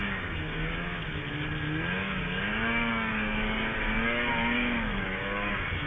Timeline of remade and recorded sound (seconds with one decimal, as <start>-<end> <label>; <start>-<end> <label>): 0.0-1.1 remade; 1.1-2.0 recorded; 2.0-5.5 remade; 5.5-5.9 recorded